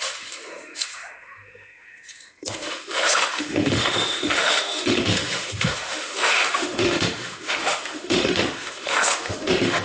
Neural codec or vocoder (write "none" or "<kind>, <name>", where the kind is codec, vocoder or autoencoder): autoencoder, DAC-VAE